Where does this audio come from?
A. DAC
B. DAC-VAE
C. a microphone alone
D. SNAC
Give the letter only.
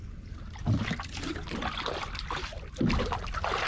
C